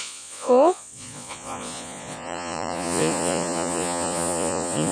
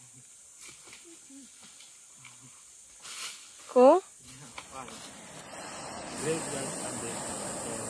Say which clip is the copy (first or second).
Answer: first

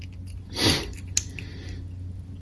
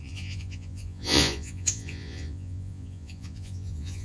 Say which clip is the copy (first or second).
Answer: second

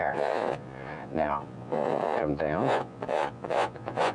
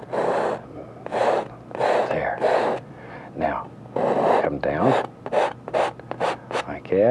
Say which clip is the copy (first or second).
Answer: first